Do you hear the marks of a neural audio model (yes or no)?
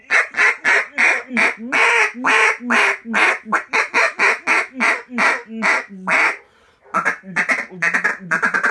no